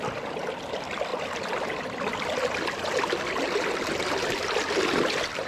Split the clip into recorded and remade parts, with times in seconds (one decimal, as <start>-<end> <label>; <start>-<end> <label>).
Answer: 0.0-5.5 recorded